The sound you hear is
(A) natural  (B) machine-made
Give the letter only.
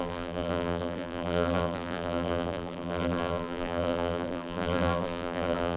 B